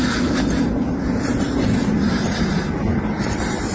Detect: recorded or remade recorded